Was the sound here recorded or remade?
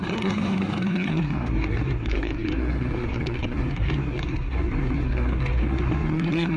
remade